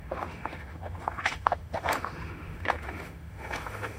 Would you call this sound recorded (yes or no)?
no